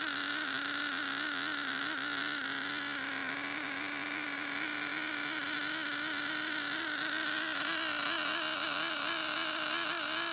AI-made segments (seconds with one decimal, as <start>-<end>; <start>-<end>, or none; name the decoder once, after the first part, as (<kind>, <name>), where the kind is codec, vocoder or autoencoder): none